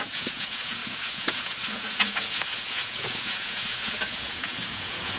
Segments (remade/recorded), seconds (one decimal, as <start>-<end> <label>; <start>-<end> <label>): 0.0-5.2 remade